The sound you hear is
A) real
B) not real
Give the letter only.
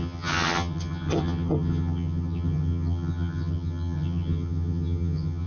B